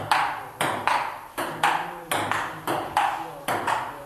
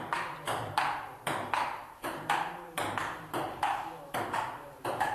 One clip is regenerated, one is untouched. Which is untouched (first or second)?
first